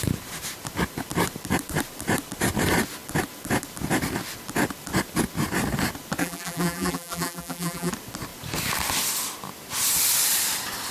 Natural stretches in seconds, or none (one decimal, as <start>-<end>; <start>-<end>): 0.0-6.2; 7.9-10.9